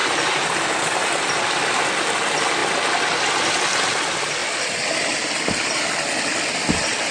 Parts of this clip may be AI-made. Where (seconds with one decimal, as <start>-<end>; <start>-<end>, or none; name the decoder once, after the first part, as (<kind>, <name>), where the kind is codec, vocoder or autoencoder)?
none